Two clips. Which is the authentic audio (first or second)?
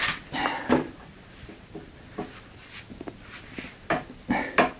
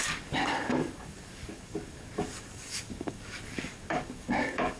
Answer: first